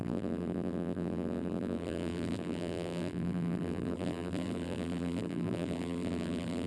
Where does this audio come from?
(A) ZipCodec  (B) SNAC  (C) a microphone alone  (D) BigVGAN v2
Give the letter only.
D